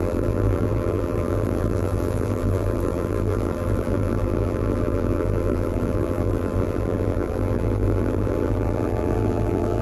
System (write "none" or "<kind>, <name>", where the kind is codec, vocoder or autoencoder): vocoder, BigVGAN v2